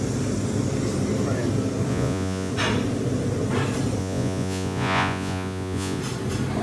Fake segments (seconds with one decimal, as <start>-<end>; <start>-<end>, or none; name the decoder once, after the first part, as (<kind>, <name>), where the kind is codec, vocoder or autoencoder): 1.9-2.5 (vocoder, Vocos); 4.0-6.0